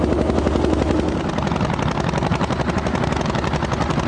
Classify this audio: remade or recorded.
recorded